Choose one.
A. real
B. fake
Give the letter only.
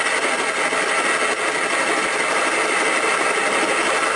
A